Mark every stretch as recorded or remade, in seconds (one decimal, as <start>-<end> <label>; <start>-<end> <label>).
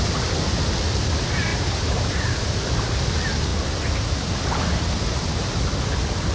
0.0-1.5 recorded; 1.5-2.7 remade; 2.7-6.3 recorded